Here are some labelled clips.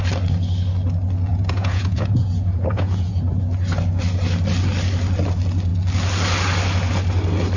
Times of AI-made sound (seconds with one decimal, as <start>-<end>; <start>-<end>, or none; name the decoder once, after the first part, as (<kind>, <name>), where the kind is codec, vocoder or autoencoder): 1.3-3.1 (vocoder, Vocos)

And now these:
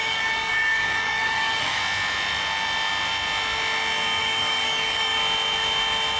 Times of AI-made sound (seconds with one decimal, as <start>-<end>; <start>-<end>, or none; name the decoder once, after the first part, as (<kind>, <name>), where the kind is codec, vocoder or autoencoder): 0.0-1.8 (codec, DAC); 4.2-5.2

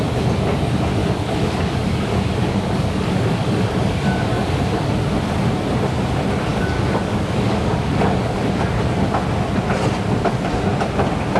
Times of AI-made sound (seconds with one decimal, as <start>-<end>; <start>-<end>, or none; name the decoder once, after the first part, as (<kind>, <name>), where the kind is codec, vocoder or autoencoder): 1.0-4.5 (codec, DAC); 6.5-8.4

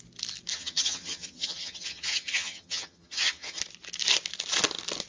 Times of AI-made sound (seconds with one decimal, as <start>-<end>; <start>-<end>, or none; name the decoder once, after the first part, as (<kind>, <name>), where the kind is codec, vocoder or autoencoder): 0.5-3.6 (vocoder, HiFi-GAN)